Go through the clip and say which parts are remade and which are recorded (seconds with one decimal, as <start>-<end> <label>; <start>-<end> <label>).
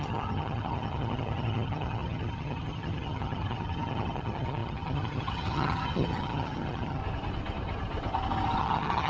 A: 0.0-7.0 remade; 7.0-8.6 recorded; 8.6-9.1 remade